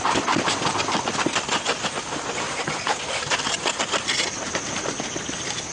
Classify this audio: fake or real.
fake